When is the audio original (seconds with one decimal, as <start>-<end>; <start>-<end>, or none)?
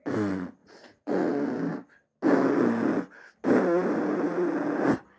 0.0-0.6; 1.3-5.2